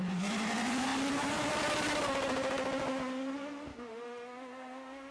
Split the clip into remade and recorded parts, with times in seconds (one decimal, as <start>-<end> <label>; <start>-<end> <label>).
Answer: 0.0-3.7 recorded; 3.7-5.1 remade